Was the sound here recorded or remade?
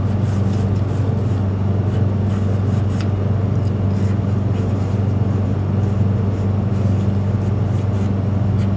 recorded